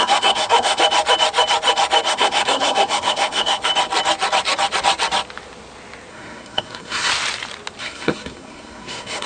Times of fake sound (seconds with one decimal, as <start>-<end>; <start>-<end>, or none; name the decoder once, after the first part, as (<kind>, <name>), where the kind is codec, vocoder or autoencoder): 0.0-0.8 (codec, SNAC); 2.1-3.6; 6.1-7.1; 7.8-9.3